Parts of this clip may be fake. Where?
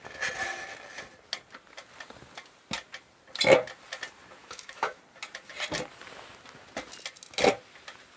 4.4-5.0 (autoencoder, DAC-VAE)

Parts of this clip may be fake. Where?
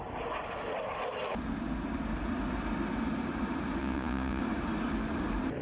3.8-4.4 (vocoder, Vocos)